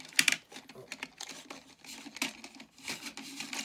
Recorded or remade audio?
recorded